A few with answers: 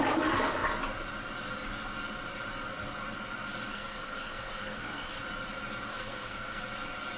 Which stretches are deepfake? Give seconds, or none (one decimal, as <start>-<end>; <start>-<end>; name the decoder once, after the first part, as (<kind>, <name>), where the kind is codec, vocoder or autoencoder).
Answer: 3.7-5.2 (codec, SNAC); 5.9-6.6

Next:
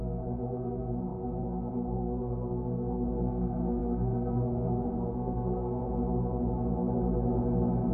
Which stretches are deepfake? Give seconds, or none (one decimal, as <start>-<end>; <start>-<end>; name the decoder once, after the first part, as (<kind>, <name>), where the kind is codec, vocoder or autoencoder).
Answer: 0.0-5.8 (codec, SNAC)

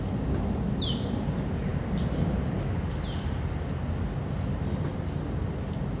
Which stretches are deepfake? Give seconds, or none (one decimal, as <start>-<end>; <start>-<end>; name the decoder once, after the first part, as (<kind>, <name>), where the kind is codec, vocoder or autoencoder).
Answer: none